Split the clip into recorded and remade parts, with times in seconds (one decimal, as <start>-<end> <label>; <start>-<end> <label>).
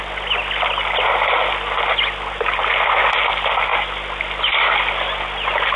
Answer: 0.0-5.8 recorded